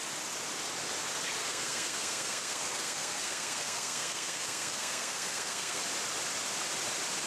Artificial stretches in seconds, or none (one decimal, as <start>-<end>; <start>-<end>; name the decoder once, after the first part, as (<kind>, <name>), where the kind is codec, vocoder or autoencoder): 1.4-5.8 (codec, SNAC)